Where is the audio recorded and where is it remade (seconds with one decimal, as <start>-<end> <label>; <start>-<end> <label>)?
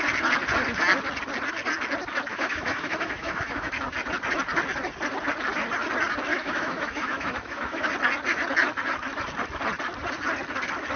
0.0-2.3 recorded; 2.3-3.7 remade; 3.7-6.3 recorded; 6.3-7.9 remade; 7.9-11.0 recorded